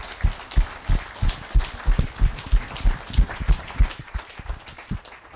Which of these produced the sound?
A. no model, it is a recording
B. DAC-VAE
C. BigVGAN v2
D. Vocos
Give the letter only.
A